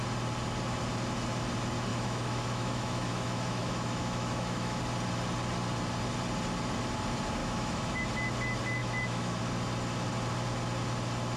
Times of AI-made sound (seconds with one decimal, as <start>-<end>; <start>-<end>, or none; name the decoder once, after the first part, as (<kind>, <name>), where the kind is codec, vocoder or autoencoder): 1.9-4.8 (autoencoder, DAC-VAE); 7.4-8.0; 8.8-9.4